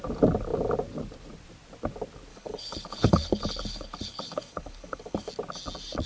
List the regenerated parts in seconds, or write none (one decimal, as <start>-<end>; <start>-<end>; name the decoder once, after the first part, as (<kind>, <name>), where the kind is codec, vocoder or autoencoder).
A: 2.3-5.3 (codec, HILCodec)